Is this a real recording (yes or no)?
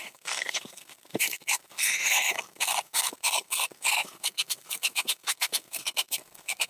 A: no